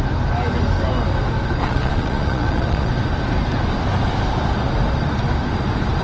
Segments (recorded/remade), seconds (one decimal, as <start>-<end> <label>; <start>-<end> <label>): 0.0-1.6 recorded; 1.6-2.9 remade; 2.9-6.0 recorded